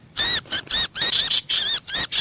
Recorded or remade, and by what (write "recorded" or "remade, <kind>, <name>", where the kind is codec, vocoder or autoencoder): remade, vocoder, BigVGAN v2